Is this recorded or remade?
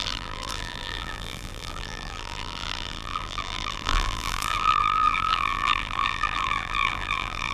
remade